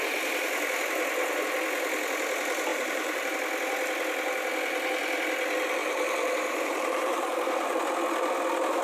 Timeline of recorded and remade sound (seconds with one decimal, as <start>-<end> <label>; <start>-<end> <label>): 0.0-2.7 recorded; 2.7-3.3 remade; 3.3-5.8 recorded; 5.8-7.8 remade; 7.8-8.8 recorded